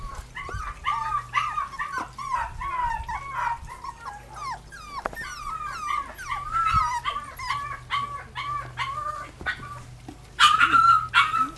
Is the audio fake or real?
real